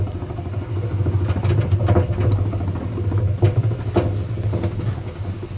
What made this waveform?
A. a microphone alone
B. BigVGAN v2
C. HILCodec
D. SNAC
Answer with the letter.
A